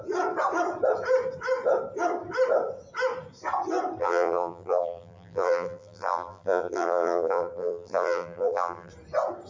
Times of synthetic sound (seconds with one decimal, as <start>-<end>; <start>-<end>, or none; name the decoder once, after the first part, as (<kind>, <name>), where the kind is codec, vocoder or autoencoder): 4.0-8.9 (vocoder, BigVGAN v2)